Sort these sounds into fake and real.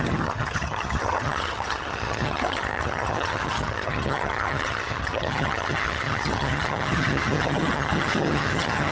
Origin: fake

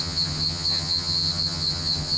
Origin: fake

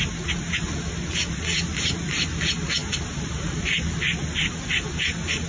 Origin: real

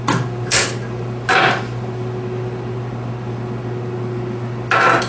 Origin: real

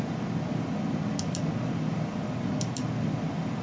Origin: real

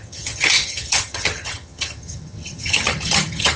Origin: fake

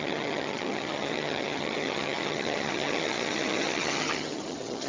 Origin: fake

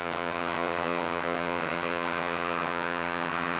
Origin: fake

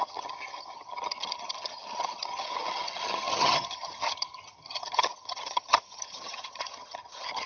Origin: fake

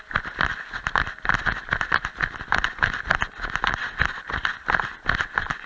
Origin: real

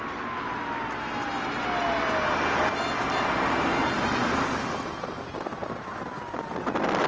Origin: real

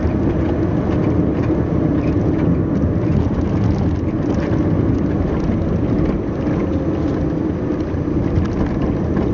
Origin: real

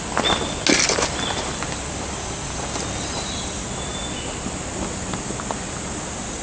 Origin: real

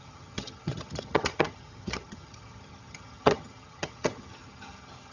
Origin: fake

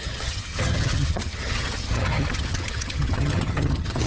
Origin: fake